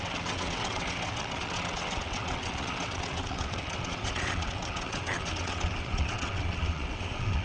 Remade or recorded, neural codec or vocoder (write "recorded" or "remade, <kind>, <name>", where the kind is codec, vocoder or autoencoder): remade, vocoder, WaveNeXt